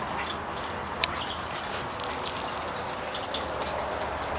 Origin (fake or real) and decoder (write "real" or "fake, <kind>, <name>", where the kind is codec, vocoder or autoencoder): real